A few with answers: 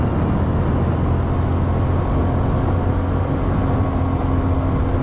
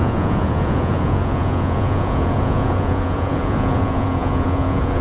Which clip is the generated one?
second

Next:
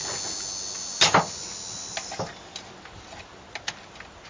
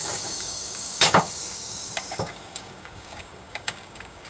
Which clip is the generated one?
second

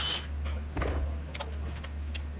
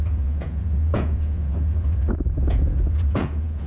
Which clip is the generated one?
second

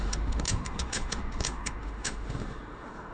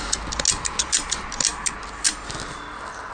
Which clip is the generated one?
first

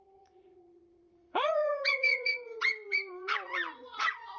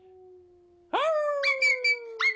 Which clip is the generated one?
first